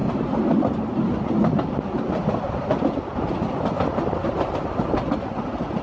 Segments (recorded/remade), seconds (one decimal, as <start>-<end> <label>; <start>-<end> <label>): 0.0-5.8 recorded